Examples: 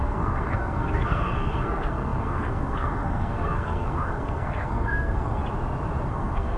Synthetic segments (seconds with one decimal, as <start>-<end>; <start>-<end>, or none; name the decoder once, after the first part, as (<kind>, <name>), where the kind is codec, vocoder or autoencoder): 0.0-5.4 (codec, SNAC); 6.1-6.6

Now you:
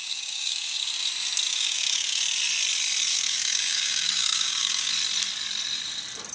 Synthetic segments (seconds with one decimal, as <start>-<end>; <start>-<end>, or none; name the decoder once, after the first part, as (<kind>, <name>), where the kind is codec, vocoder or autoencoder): 0.0-0.9 (codec, DAC); 1.5-2.2; 3.1-4.9

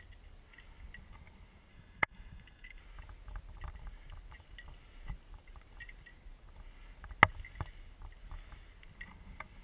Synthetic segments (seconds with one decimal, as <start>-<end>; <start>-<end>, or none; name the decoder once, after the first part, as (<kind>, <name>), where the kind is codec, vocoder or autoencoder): 1.7-2.8 (autoencoder, DAC-VAE)

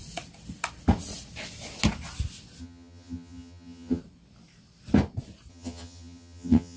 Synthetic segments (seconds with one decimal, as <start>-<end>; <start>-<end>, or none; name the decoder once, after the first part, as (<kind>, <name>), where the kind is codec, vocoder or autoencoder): 2.6-4.0 (vocoder, HiFi-GAN); 5.5-6.8

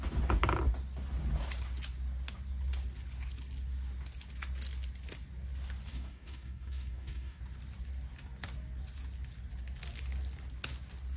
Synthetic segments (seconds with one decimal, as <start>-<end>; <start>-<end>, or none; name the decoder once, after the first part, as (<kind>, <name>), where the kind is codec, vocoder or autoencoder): 5.9-7.4 (codec, DAC)

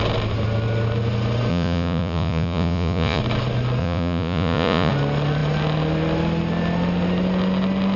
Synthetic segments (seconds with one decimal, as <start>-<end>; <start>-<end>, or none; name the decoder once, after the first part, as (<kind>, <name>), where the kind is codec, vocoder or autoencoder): 1.5-3.2 (vocoder, Vocos); 3.8-4.9